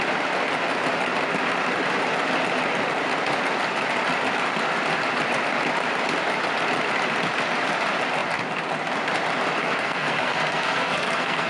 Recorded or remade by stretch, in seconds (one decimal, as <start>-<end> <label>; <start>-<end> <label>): 0.0-9.6 recorded; 9.6-11.5 remade